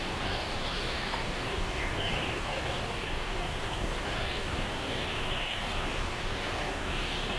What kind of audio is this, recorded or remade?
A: remade